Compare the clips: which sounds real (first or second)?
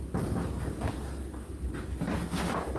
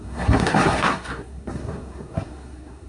first